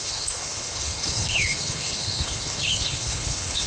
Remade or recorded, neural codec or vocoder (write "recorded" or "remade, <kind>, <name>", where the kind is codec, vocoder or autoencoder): remade, codec, HILCodec